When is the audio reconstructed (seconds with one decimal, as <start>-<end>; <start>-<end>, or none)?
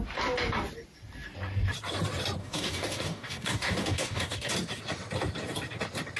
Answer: 2.4-4.5